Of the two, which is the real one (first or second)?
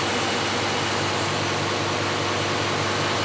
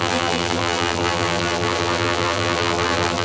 first